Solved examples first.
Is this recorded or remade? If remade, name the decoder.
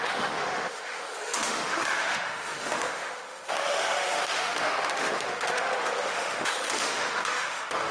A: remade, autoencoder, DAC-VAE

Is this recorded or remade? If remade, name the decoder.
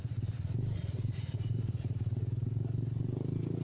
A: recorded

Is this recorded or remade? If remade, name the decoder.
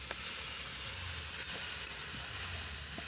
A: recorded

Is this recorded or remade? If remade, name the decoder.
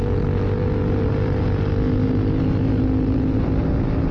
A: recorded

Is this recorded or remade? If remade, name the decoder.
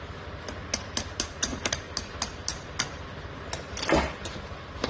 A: recorded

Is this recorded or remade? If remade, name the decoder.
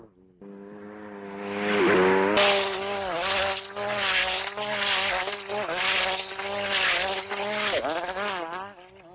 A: recorded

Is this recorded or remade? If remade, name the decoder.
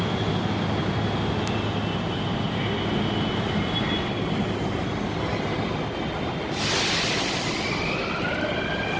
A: recorded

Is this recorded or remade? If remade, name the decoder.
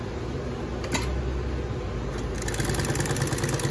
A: recorded